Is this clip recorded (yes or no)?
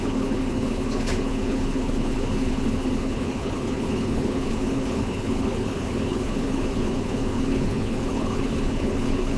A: no